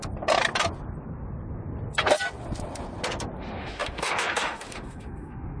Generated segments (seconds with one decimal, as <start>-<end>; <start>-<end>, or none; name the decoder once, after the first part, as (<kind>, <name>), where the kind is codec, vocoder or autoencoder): 3.4-5.6 (autoencoder, DAC-VAE)